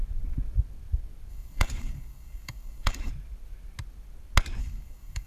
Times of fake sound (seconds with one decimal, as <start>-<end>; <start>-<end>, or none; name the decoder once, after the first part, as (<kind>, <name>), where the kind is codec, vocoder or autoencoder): 1.3-3.1 (codec, DAC); 4.6-5.3